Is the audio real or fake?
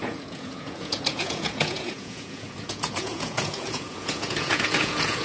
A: fake